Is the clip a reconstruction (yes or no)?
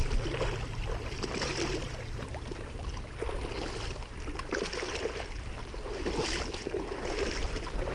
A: no